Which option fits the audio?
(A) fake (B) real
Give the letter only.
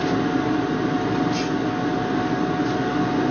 B